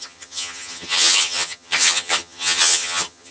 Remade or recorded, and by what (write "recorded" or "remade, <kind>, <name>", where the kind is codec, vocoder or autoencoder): remade, vocoder, HiFi-GAN